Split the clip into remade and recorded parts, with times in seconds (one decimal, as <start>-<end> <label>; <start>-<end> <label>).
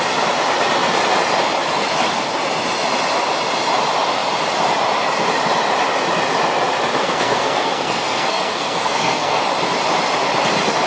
0.0-7.0 recorded; 7.0-9.4 remade; 9.4-10.9 recorded